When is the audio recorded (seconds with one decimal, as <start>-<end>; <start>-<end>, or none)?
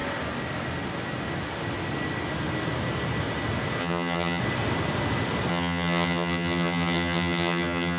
0.0-3.8; 4.4-5.5